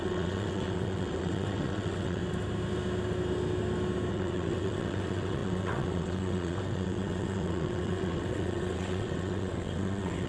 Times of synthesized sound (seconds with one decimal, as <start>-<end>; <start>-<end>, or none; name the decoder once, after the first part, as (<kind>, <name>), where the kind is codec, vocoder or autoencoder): 0.0-2.2 (vocoder, WaveNeXt); 4.1-10.3